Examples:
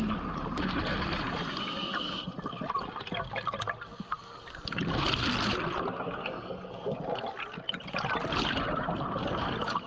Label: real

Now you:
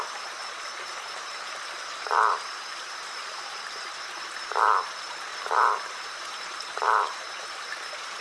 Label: fake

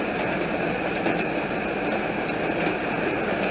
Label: fake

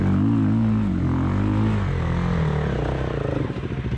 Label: real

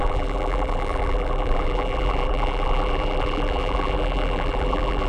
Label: fake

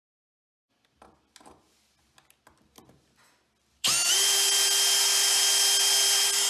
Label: real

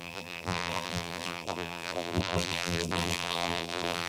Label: fake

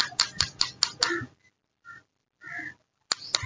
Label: real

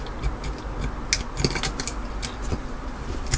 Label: real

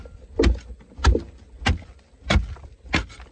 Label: real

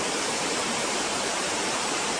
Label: fake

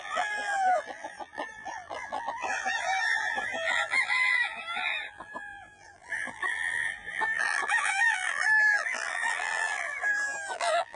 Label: fake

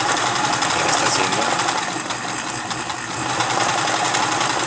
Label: fake